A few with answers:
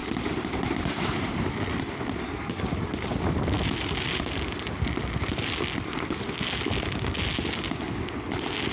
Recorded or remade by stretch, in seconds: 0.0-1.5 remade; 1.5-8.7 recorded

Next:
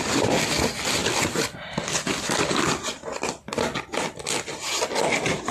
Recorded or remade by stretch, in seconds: 0.0-5.5 recorded

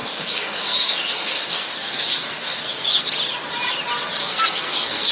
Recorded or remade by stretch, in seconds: 0.0-3.1 remade; 3.1-4.2 recorded; 4.2-5.1 remade

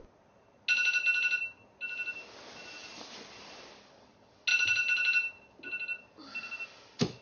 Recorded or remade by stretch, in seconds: 0.0-7.2 recorded